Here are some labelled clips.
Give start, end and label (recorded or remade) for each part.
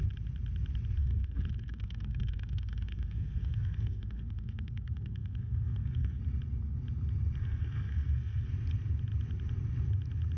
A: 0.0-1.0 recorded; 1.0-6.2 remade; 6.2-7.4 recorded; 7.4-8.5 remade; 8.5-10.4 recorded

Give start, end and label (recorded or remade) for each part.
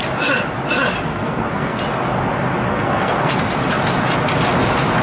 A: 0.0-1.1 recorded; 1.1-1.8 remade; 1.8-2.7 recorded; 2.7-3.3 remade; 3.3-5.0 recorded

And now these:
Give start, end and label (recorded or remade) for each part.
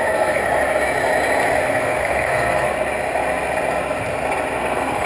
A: 0.0-0.4 remade; 0.4-1.7 recorded; 1.7-2.7 remade; 2.7-4.6 recorded; 4.6-5.1 remade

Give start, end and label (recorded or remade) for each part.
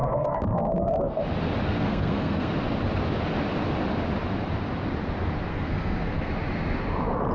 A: 0.0-1.2 remade; 1.2-1.6 recorded; 1.6-2.5 remade; 2.5-5.5 recorded; 5.5-6.3 remade; 6.3-7.3 recorded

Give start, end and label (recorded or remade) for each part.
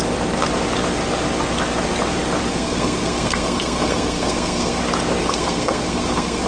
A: 0.0-2.5 recorded; 2.5-4.8 remade; 4.8-5.2 recorded; 5.2-6.5 remade